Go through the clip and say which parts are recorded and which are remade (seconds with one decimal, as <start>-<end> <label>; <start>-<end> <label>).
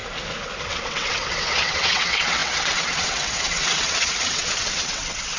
0.0-0.6 recorded; 0.6-5.4 remade